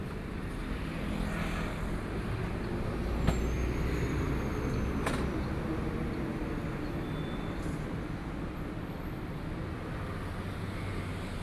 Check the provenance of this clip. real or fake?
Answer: real